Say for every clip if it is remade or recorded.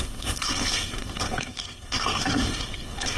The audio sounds remade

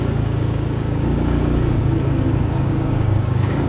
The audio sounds remade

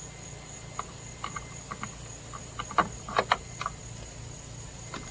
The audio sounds recorded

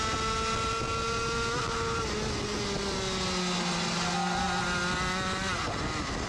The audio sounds recorded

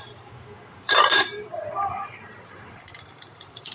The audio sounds remade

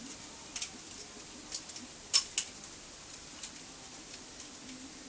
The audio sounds recorded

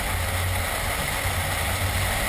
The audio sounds recorded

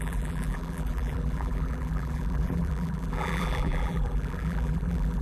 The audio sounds remade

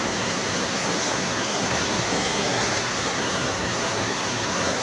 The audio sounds remade